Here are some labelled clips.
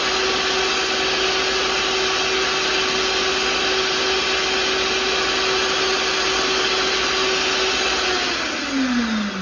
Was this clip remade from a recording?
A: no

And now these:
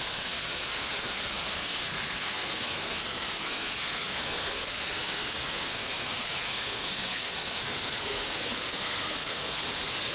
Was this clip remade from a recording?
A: yes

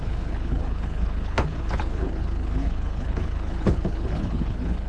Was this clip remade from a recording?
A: yes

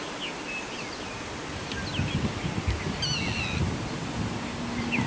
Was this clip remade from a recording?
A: no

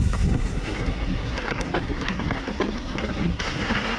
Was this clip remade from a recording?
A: yes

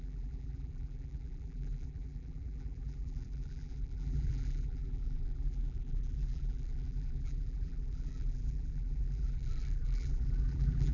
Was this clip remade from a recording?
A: yes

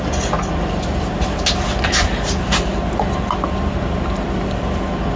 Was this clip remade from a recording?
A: no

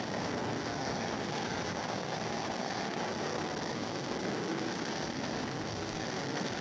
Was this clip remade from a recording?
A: yes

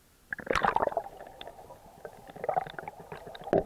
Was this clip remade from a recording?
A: no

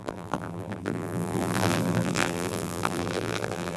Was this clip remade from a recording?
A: yes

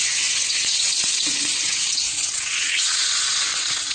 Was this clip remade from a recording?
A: yes